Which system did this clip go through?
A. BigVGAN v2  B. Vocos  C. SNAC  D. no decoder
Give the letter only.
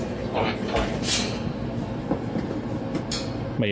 D